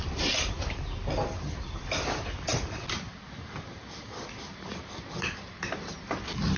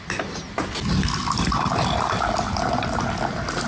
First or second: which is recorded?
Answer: second